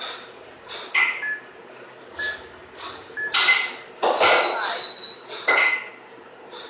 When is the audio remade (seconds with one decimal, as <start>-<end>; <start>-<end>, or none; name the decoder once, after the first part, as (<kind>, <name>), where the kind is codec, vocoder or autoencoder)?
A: none